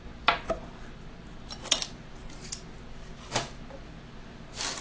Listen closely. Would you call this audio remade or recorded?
recorded